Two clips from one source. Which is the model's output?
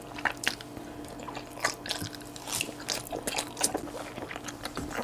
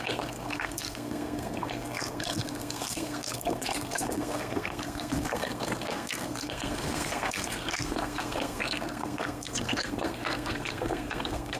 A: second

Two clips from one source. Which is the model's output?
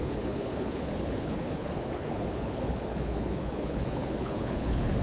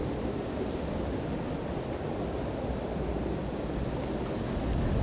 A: first